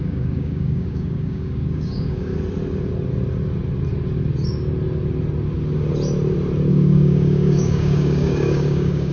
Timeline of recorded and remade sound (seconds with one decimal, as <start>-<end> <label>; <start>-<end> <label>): 0.0-2.3 remade; 2.3-6.7 recorded; 6.7-9.1 remade

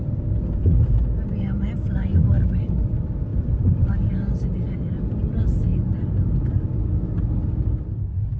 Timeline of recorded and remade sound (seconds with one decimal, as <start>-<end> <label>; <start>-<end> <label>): 0.0-2.2 recorded; 2.2-2.9 remade; 2.9-3.3 recorded; 3.3-4.1 remade; 4.1-8.4 recorded

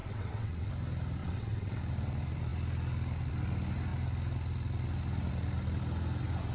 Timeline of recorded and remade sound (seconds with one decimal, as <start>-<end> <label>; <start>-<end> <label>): 0.0-0.7 remade; 0.7-1.2 recorded; 1.2-1.8 remade; 1.8-6.5 recorded

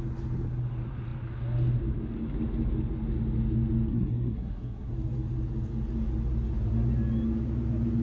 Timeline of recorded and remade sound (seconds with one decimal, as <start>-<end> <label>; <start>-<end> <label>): 0.0-3.9 recorded; 3.9-4.9 remade; 4.9-8.0 recorded

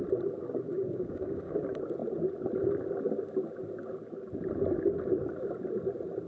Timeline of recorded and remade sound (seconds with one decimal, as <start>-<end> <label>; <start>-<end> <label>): 0.0-0.7 recorded; 0.7-1.5 remade; 1.5-6.3 recorded